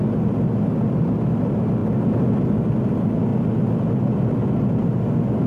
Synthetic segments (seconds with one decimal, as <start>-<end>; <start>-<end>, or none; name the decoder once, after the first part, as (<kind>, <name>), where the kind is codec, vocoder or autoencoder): none